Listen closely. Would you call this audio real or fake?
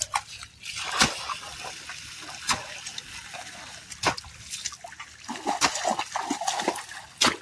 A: real